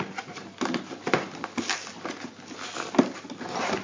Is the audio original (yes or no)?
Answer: yes